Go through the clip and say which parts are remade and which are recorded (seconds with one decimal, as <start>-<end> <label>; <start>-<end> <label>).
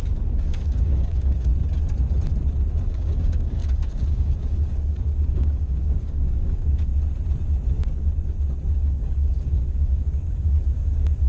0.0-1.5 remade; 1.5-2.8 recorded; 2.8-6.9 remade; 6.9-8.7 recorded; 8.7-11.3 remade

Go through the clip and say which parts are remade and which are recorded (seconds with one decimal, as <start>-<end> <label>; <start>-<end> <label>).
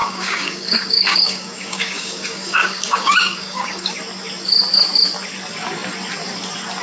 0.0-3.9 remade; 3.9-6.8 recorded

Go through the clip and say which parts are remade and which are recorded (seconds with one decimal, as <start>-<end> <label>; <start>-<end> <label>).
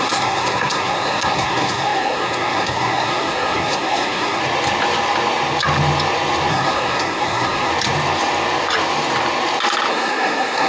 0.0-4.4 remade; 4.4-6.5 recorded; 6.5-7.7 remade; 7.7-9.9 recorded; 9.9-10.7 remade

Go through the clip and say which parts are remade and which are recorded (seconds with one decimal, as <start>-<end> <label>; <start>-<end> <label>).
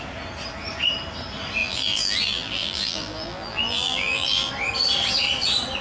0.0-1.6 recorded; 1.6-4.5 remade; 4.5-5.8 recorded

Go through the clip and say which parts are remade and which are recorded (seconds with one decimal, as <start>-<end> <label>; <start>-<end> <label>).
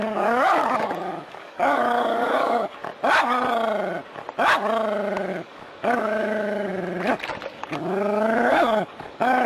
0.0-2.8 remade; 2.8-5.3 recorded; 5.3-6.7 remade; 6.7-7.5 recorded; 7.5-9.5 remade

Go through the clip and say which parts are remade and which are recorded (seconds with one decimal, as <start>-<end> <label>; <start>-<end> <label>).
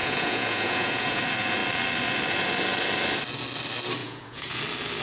0.0-1.2 remade; 1.2-4.0 recorded; 4.0-4.6 remade; 4.6-5.0 recorded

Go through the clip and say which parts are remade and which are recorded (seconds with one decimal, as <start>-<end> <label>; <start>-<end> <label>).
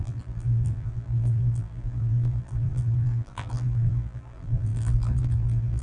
0.0-5.8 remade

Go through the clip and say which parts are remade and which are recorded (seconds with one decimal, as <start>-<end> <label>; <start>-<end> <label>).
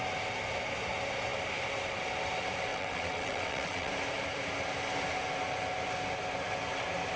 0.0-2.7 recorded; 2.7-3.9 remade; 3.9-7.2 recorded